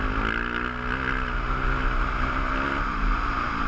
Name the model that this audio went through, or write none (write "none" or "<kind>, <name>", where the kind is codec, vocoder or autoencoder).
none